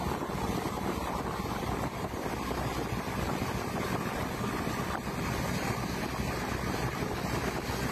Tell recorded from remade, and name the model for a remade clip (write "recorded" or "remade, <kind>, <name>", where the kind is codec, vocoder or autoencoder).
recorded